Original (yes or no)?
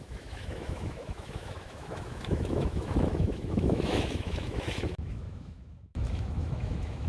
no